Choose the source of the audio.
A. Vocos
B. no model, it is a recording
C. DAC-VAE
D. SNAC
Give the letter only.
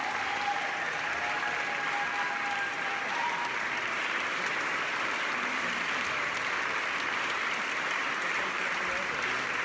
B